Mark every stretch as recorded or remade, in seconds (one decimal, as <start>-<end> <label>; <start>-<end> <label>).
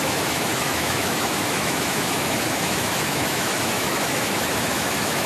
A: 0.0-5.3 remade